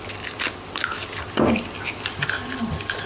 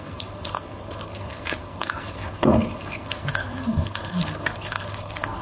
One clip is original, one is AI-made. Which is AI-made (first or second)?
second